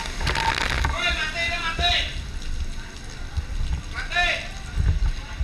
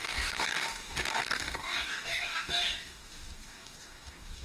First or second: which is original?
first